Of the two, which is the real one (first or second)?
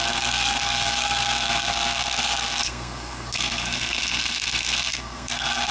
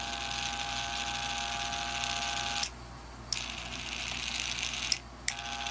second